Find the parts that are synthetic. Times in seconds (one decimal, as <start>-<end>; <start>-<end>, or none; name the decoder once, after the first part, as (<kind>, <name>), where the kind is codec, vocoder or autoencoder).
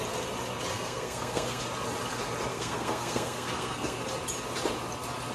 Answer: 0.7-1.6 (codec, SNAC); 2.5-4.0